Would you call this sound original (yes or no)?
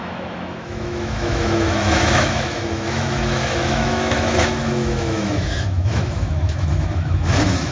no